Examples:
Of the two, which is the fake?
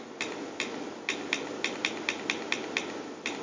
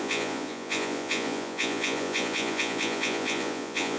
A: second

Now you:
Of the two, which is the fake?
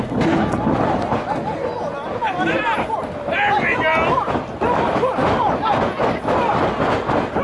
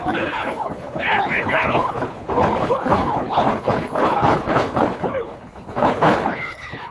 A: second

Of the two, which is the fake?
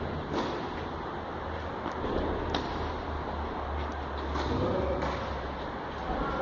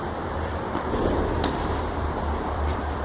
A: second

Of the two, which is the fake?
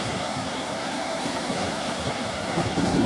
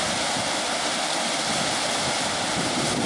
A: first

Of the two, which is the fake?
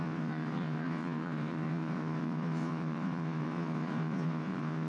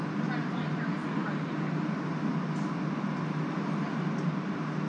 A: first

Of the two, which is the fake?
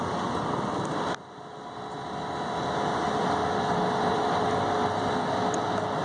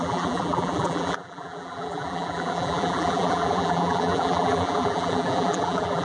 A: second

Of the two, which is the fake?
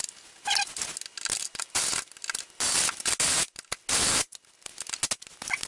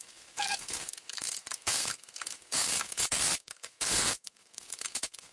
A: second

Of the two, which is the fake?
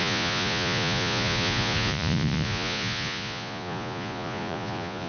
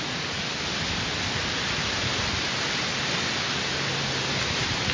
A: first